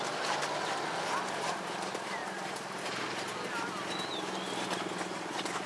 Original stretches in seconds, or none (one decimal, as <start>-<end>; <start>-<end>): 0.0-5.7

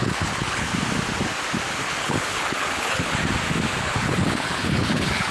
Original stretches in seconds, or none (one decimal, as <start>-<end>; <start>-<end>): 0.7-1.8; 3.2-3.8

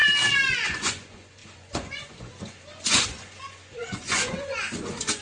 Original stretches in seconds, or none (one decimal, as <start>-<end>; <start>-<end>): 0.0-0.6

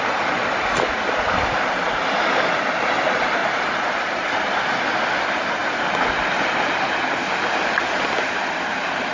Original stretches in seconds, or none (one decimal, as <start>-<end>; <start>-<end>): 0.0-9.1